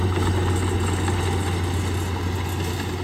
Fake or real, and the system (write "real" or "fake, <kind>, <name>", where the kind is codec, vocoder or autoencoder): real